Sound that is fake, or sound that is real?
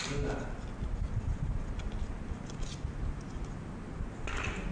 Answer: real